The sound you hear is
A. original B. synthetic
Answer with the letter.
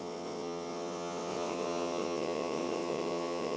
B